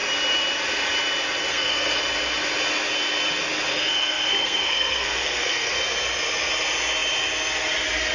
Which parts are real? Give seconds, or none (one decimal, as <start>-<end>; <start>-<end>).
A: 0.0-1.5; 2.0-3.7; 5.7-8.1